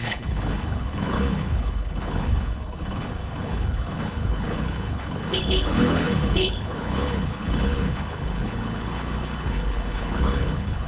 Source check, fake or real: fake